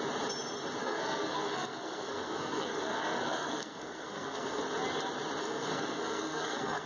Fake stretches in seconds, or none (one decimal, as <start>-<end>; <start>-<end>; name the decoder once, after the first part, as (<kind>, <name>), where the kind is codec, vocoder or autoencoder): 0.8-4.6 (codec, SNAC); 5.4-6.9

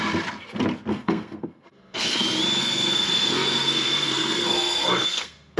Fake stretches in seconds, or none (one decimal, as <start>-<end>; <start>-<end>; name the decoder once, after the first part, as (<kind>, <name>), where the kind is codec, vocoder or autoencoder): 0.9-2.2 (codec, SNAC); 2.6-5.6

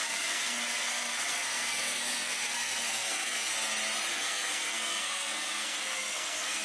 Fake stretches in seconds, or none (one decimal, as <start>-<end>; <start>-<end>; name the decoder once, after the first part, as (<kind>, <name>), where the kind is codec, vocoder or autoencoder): 0.0-3.5 (codec, SNAC); 4.1-6.6

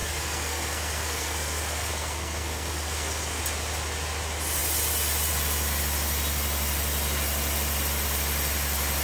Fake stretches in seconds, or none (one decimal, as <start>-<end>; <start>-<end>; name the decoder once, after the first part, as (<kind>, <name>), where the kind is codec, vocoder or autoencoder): 0.0-3.4 (codec, SNAC)

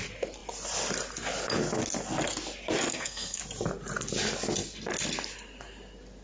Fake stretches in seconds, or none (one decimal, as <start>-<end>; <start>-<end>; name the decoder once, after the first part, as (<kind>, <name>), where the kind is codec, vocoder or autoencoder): 2.9-3.4 (codec, SNAC)

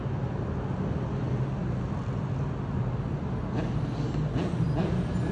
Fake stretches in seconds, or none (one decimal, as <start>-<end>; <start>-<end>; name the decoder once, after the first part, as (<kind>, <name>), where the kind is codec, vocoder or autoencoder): none

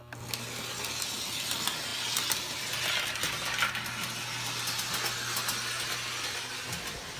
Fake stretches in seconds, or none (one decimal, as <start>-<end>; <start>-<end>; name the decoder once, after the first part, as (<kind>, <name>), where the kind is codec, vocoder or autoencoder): none

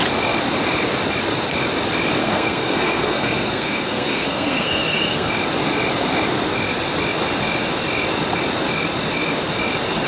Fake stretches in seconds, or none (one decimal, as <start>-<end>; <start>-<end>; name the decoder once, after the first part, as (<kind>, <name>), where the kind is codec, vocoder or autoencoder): 2.2-5.3 (codec, SNAC)